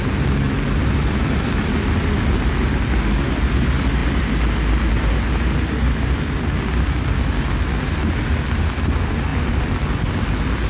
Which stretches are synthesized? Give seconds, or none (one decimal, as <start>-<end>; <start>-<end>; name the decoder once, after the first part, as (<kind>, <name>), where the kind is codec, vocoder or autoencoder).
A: none